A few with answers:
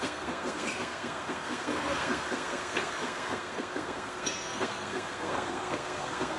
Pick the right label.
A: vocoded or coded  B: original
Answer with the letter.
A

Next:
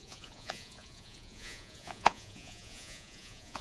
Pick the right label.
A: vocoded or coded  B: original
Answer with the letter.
A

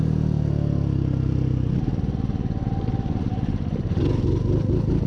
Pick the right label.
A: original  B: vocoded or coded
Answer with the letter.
A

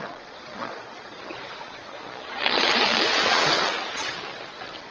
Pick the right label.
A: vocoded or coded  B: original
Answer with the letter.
A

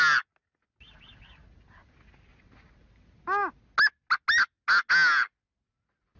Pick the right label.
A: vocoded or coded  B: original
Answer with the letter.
B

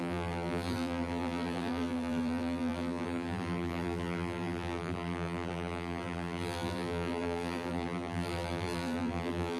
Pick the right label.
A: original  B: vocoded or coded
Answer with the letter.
B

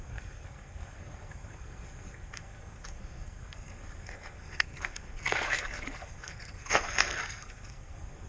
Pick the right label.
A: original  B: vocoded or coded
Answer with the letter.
B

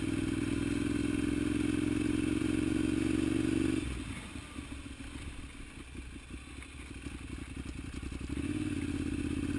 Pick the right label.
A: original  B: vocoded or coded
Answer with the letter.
A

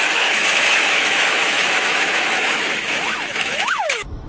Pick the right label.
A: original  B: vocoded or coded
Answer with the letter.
B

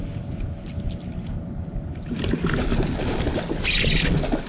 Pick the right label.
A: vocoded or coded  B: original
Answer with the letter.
B